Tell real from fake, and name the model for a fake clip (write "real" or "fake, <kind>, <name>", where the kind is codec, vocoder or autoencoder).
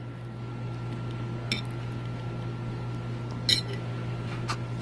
real